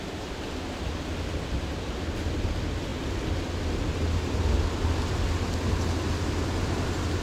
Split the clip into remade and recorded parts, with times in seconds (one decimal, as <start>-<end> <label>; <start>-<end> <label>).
0.0-7.2 recorded